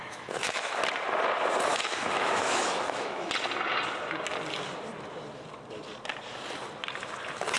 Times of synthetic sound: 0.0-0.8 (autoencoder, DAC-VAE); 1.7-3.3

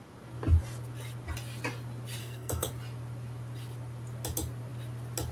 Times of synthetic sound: 2.2-2.7 (codec, SNAC)

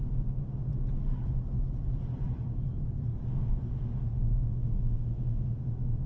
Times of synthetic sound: 0.0-0.7 (autoencoder, DAC-VAE); 3.3-6.1

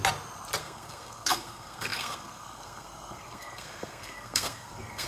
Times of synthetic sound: 0.6-5.1 (codec, SNAC)

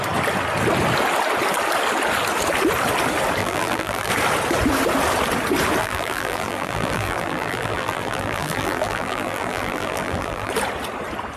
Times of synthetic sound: 3.4-4.1 (vocoder, BigVGAN v2); 5.8-10.5

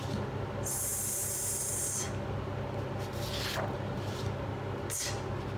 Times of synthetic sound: none

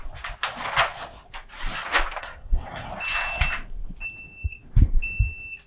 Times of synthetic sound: 2.2-2.9 (codec, SNAC)

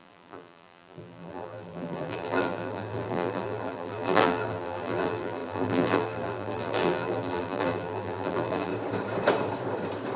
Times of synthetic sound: 0.0-8.7 (vocoder, BigVGAN v2)